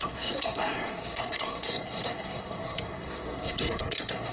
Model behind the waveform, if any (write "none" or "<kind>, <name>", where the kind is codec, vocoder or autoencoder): codec, SNAC